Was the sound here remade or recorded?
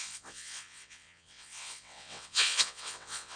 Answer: remade